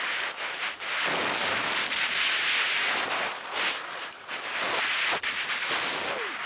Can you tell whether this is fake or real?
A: real